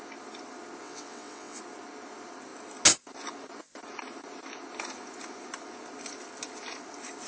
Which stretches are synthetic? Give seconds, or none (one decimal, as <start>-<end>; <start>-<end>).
0.8-1.6